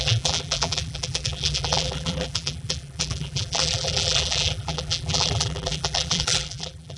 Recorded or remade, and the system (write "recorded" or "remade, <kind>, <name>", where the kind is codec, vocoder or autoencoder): remade, vocoder, BigVGAN v2